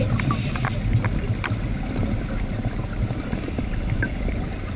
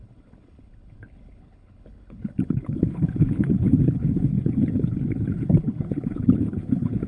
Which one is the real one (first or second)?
first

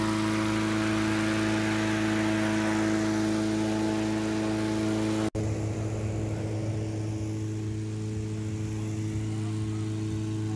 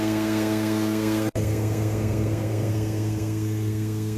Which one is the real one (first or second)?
first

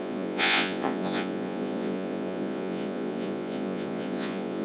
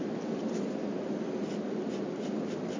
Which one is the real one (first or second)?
second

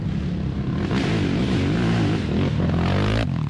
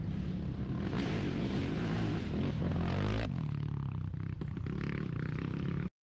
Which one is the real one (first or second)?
first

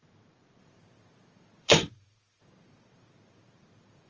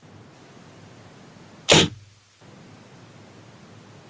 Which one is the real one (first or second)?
second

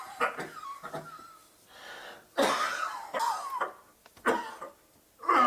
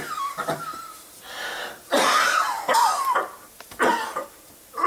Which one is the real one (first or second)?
first